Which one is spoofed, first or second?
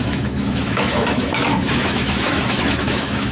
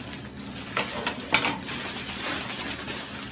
first